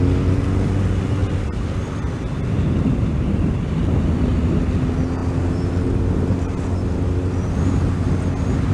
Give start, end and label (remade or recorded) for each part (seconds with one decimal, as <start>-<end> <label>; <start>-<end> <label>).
0.0-1.2 recorded; 1.2-2.2 remade; 2.2-8.7 recorded